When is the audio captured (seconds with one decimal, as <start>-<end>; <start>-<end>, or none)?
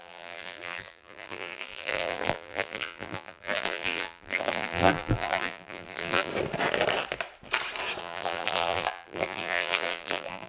6.3-8.0